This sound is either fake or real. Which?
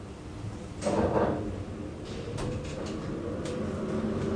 real